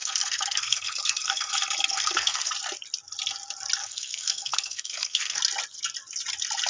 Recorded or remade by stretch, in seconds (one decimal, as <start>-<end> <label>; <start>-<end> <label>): 0.0-1.5 remade; 1.5-1.9 recorded; 1.9-2.5 remade; 2.5-3.8 recorded; 3.8-5.4 remade; 5.4-6.7 recorded